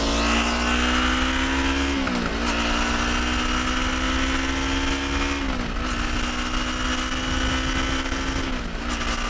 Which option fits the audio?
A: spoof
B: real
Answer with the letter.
B